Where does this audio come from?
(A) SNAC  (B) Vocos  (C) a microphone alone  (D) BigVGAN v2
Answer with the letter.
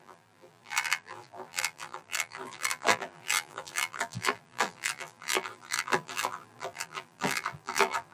D